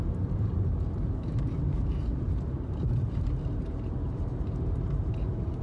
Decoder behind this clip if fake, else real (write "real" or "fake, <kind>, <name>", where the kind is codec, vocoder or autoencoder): fake, vocoder, BigVGAN v2